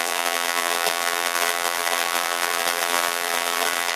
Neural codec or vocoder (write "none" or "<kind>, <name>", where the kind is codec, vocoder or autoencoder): vocoder, BigVGAN v2